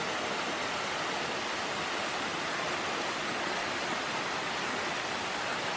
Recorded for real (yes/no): yes